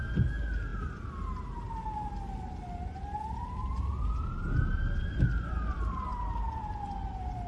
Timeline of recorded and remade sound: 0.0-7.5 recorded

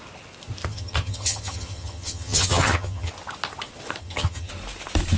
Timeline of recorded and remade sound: 0.0-0.7 recorded; 0.7-3.1 remade; 3.1-4.0 recorded; 4.0-4.5 remade; 4.5-5.2 recorded

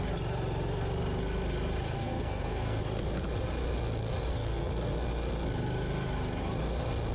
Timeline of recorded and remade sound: 0.0-1.9 recorded; 1.9-2.8 remade; 2.8-4.3 recorded; 4.3-4.9 remade; 4.9-7.1 recorded

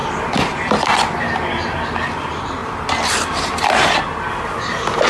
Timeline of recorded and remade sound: 0.0-1.3 remade; 1.3-2.6 recorded; 2.6-4.0 remade; 4.0-5.1 recorded

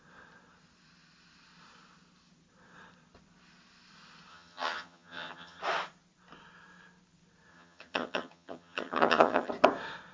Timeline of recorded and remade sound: 0.0-4.3 recorded; 4.3-5.6 remade; 5.6-7.5 recorded; 7.5-9.5 remade; 9.5-10.1 recorded

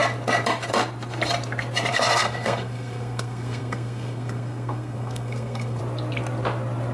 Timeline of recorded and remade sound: 0.0-1.9 recorded; 1.9-5.8 remade; 5.8-6.9 recorded

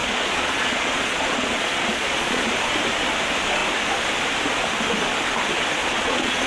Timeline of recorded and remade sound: 0.0-2.5 remade; 2.5-5.8 recorded; 5.8-6.5 remade

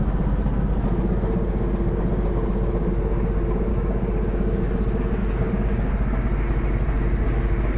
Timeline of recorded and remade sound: 0.0-3.7 recorded; 3.7-4.6 remade; 4.6-5.2 recorded; 5.2-5.9 remade; 5.9-7.8 recorded